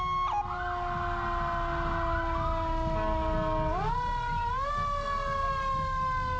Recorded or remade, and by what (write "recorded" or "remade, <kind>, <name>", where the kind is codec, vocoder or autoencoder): recorded